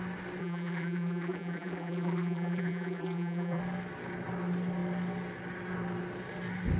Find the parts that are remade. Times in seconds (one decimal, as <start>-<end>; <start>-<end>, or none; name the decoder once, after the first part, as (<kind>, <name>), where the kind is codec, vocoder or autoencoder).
0.4-3.6 (vocoder, BigVGAN v2)